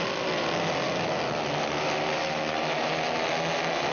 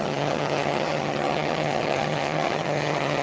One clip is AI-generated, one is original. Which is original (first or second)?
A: first